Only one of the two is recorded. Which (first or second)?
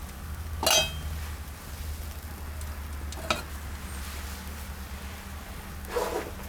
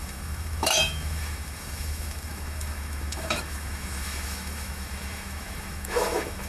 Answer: first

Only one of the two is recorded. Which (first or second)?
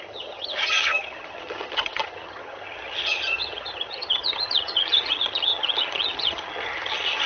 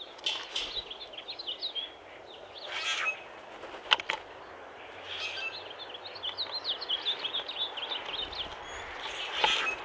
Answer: second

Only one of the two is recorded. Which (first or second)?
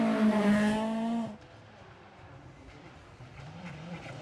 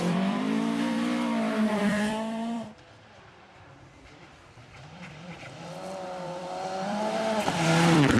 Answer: first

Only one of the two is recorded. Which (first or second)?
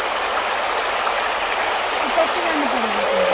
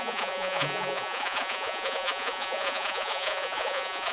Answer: first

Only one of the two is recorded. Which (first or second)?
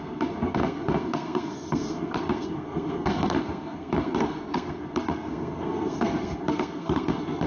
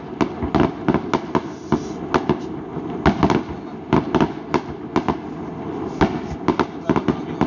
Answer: second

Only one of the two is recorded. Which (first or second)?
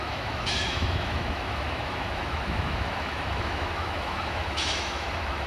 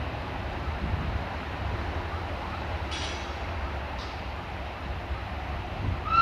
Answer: second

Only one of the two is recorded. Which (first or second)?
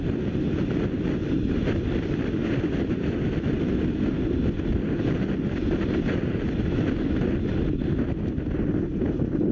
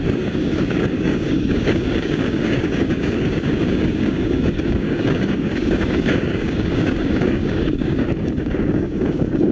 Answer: first